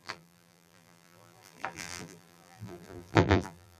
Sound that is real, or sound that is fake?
fake